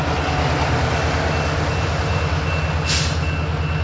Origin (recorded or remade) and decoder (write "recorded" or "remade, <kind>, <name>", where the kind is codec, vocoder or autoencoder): recorded